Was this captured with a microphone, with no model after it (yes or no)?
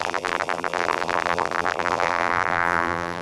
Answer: no